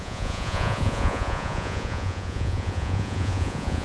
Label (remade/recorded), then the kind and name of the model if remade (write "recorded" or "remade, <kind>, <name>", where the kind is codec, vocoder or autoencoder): remade, vocoder, Vocos